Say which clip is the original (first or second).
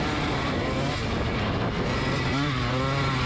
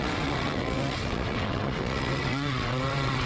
first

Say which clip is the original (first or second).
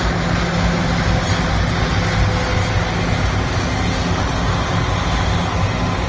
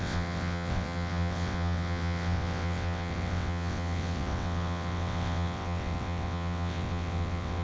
first